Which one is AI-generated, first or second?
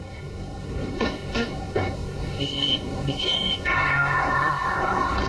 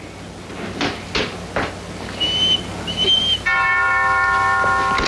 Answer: first